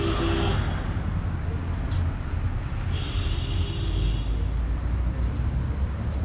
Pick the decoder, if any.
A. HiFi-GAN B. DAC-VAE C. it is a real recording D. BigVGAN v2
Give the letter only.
C